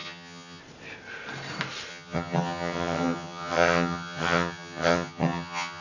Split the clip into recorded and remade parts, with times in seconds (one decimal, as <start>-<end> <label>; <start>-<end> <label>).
0.0-0.6 remade; 0.6-1.9 recorded; 1.9-5.8 remade